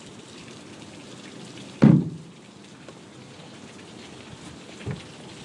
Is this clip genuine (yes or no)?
yes